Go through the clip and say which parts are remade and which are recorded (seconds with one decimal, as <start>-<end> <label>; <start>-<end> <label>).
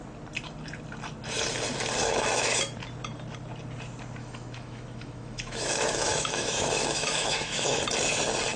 0.0-2.0 recorded; 2.0-2.6 remade; 2.6-4.2 recorded; 4.2-7.8 remade; 7.8-8.6 recorded